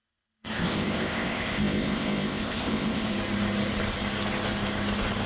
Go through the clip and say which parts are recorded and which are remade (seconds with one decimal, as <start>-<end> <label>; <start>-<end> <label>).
0.0-3.1 remade; 3.1-5.3 recorded